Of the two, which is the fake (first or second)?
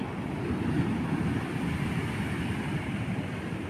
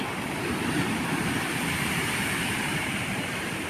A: second